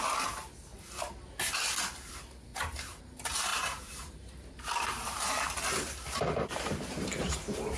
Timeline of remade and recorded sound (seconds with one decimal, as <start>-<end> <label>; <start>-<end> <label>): 0.0-2.5 recorded; 2.5-3.0 remade; 3.0-3.5 recorded; 3.5-7.8 remade